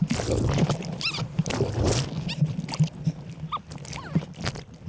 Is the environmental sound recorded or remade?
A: recorded